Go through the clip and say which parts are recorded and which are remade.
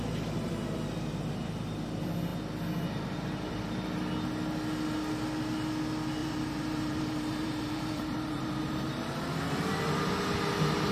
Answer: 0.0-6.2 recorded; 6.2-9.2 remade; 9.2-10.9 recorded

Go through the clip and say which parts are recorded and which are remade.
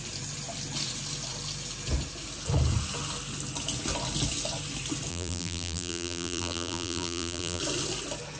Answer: 0.0-5.1 recorded; 5.1-7.6 remade; 7.6-8.4 recorded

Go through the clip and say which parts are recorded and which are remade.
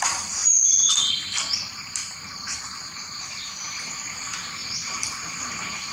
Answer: 0.0-2.0 recorded; 2.0-3.7 remade; 3.7-4.6 recorded; 4.6-5.5 remade; 5.5-5.9 recorded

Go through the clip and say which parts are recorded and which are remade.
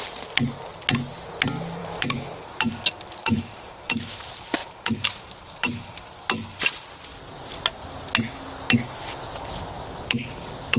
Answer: 0.0-1.8 recorded; 1.8-2.5 remade; 2.5-3.2 recorded; 3.2-4.0 remade; 4.0-4.6 recorded; 4.6-6.0 remade; 6.0-10.8 recorded